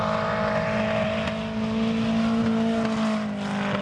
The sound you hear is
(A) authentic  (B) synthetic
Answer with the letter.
A